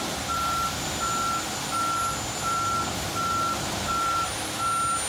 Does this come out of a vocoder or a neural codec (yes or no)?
no